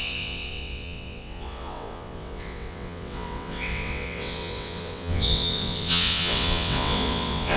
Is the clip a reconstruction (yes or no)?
yes